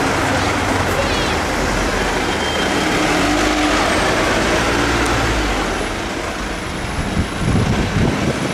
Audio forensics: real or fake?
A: real